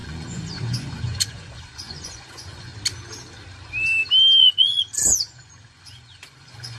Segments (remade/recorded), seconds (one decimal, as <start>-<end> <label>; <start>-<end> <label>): 0.0-2.7 remade; 2.7-4.4 recorded; 4.4-6.8 remade